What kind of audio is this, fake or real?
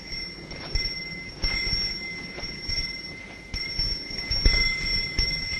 real